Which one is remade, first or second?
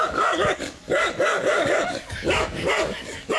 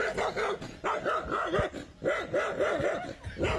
first